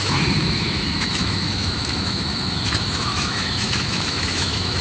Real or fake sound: fake